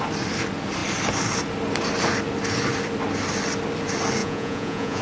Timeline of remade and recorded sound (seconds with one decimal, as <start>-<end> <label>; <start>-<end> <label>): 0.0-4.2 recorded; 4.2-5.0 remade

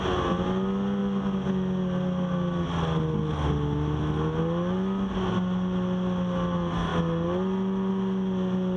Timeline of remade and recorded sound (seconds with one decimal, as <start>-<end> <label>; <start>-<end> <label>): 0.0-8.8 recorded

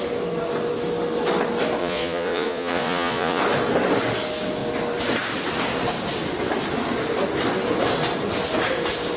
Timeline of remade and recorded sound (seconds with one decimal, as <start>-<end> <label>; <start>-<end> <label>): 0.0-1.8 recorded; 1.8-3.4 remade; 3.4-9.2 recorded

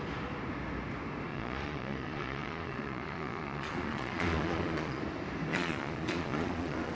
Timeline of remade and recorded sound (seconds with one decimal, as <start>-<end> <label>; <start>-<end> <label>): 0.0-1.3 recorded; 1.3-5.0 remade; 5.0-5.5 recorded; 5.5-6.9 remade

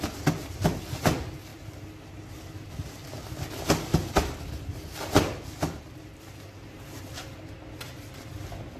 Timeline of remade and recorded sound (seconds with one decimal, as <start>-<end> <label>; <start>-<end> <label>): 0.0-8.8 recorded